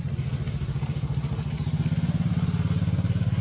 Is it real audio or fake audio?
real